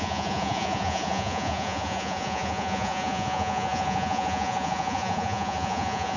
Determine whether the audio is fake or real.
fake